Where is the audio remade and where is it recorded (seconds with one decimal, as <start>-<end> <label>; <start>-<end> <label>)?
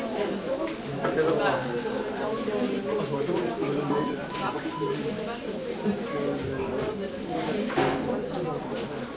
0.0-9.2 recorded